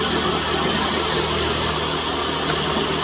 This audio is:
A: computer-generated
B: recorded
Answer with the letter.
B